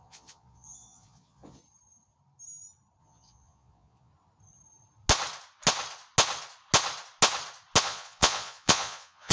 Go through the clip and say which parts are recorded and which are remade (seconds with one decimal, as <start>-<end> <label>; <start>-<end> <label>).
0.0-1.6 remade; 1.6-3.0 recorded; 3.0-4.1 remade; 4.1-7.8 recorded; 7.8-9.3 remade